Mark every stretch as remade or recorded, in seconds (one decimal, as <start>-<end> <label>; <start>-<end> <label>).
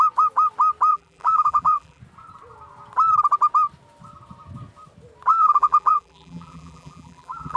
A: 0.0-0.9 recorded; 0.9-2.0 remade; 2.0-5.3 recorded; 5.3-7.6 remade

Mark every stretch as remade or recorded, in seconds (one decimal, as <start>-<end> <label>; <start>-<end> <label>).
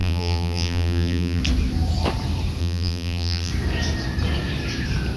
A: 0.0-1.4 remade; 1.4-2.6 recorded; 2.6-3.5 remade; 3.5-5.2 recorded